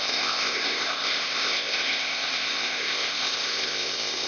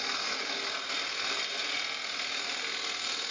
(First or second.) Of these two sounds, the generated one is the first